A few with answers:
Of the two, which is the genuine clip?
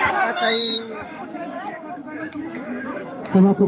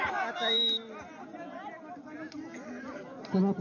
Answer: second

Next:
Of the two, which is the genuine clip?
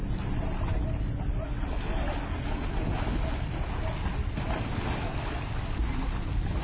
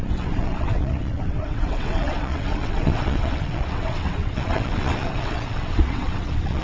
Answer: first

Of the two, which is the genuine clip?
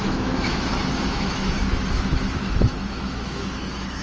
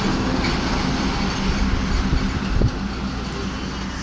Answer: second